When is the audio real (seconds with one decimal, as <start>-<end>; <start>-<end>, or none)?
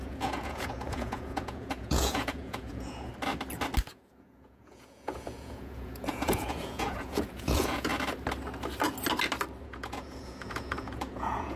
3.1-3.9; 7.9-9.6